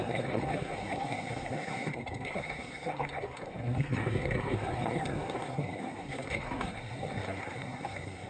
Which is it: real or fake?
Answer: fake